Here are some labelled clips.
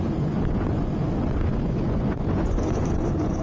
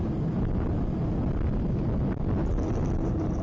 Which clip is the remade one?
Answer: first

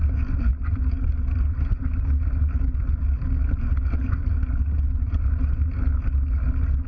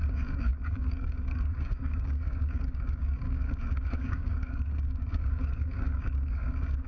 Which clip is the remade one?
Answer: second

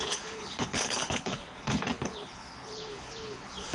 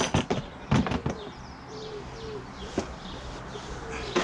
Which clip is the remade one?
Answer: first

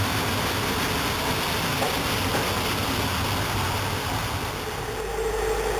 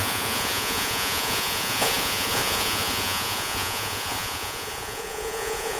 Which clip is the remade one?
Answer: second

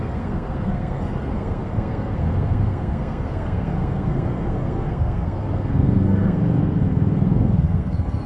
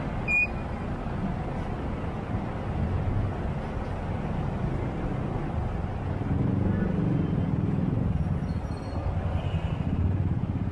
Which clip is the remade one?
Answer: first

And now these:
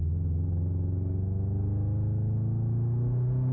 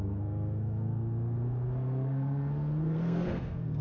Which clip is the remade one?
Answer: second